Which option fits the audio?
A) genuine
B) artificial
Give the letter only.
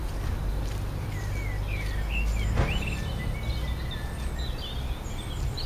A